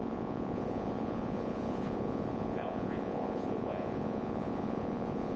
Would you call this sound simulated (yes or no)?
yes